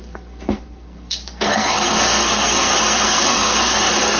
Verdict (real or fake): fake